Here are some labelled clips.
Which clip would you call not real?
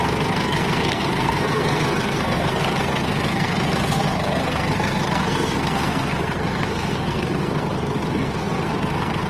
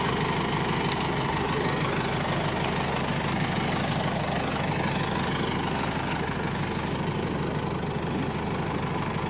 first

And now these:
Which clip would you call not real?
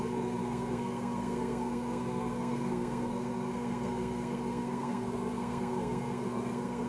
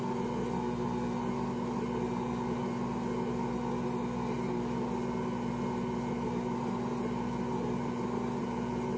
first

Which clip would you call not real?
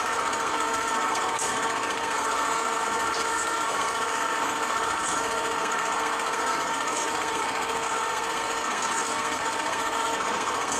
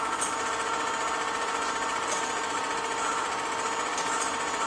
first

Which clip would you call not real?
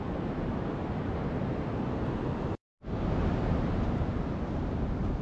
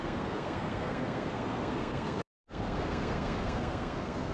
second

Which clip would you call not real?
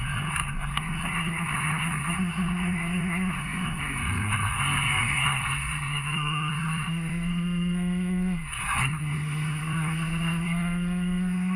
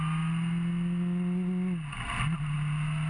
first